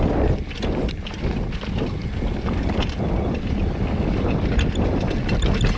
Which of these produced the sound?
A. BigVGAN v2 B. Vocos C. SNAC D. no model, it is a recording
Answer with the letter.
D